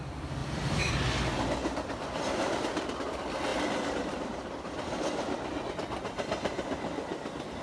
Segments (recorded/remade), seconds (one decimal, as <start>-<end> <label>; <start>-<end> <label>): 0.0-0.4 recorded; 0.4-0.9 remade; 0.9-1.6 recorded; 1.6-3.0 remade; 3.0-7.6 recorded